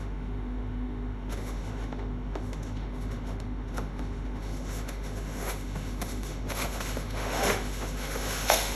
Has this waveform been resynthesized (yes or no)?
yes